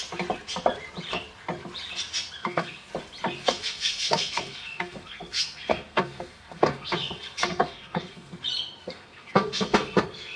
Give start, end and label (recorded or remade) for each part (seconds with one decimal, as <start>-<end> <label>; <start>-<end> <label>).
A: 0.0-2.4 recorded; 2.4-2.9 remade; 2.9-3.4 recorded; 3.4-8.4 remade; 8.4-8.8 recorded; 8.8-10.4 remade